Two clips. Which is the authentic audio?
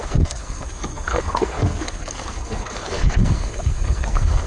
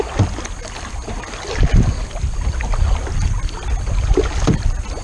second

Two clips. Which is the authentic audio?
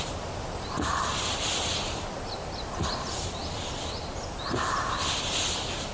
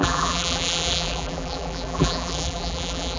first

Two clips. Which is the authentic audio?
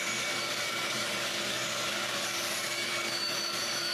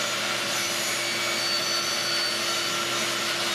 second